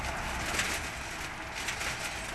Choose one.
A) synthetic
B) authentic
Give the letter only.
B